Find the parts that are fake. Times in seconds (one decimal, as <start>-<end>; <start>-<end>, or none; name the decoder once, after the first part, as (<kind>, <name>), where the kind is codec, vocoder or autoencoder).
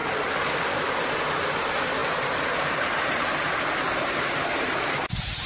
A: none